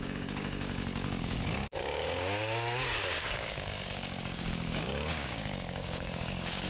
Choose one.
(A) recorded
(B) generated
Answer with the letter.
B